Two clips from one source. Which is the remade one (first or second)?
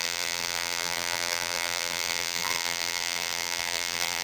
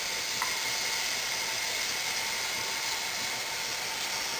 first